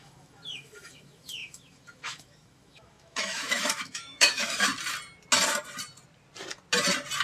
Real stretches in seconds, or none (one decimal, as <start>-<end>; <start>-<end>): 4.7-7.2